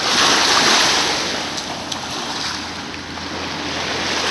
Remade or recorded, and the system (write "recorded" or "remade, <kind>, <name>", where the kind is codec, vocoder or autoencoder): recorded